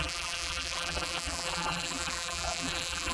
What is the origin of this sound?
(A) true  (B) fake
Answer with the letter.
B